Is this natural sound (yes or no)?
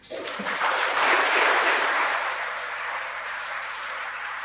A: no